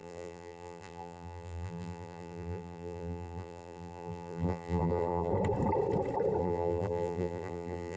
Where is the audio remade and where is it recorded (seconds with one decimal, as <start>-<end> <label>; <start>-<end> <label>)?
0.0-5.3 remade; 5.3-6.4 recorded; 6.4-8.0 remade